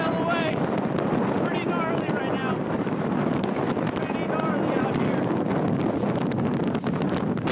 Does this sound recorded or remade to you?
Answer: recorded